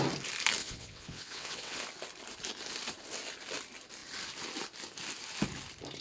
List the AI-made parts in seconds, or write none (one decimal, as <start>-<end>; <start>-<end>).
0.6-1.8